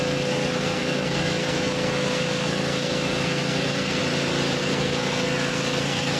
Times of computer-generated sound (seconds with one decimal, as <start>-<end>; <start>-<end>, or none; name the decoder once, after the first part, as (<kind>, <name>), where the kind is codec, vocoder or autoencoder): 0.0-4.0 (codec, SNAC); 4.6-6.2